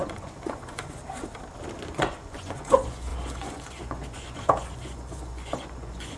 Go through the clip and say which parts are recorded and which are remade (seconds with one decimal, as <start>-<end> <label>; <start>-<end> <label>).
0.0-1.0 remade; 1.0-1.9 recorded; 1.9-6.2 remade